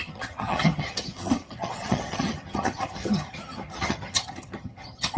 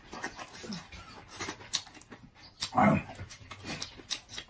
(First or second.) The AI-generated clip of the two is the first